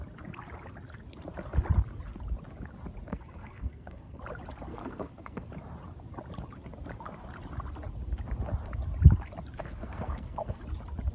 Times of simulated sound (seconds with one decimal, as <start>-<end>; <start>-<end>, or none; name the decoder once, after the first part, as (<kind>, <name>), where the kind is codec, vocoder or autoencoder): 3.1-4.2 (codec, SNAC); 4.7-5.5; 9.6-10.6